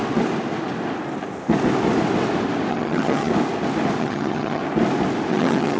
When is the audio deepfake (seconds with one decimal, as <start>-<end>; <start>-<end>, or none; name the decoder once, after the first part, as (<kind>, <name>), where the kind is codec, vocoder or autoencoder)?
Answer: 2.7-3.3 (vocoder, HiFi-GAN); 4.0-4.6; 5.3-5.8